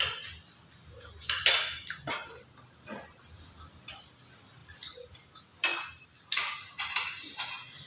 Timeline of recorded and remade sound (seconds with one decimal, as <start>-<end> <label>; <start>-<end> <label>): 0.0-4.6 recorded; 4.6-5.2 remade; 5.2-7.9 recorded